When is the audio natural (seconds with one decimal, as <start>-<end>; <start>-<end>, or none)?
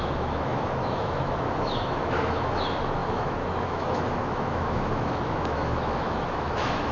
none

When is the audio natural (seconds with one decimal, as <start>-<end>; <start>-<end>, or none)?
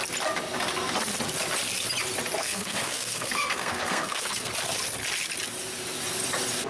0.0-2.4; 4.5-6.7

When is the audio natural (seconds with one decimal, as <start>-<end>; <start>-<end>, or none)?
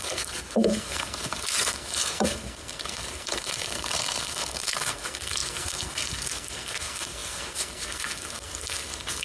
none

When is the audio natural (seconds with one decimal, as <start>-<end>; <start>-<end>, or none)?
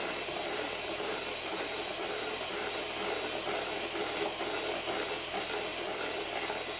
2.8-5.7; 6.3-6.8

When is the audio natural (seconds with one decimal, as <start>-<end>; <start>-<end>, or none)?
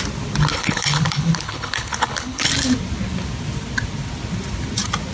0.0-0.5; 2.5-5.1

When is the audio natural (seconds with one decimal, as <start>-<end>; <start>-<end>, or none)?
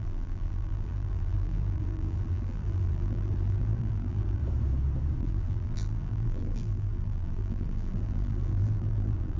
4.4-5.2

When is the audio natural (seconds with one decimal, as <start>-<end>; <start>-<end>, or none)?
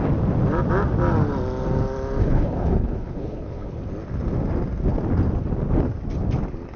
0.0-2.2; 3.8-6.8